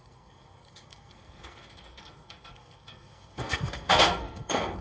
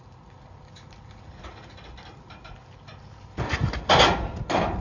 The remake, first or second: first